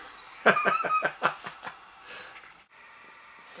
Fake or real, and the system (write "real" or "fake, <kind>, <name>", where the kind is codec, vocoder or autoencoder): real